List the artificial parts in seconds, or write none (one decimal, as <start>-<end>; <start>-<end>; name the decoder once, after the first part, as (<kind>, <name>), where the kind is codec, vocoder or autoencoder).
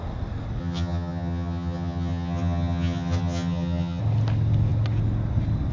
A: 0.6-4.0 (vocoder, HiFi-GAN)